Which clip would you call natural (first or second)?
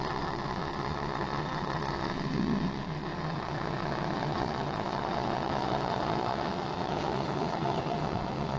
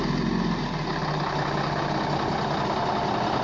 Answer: second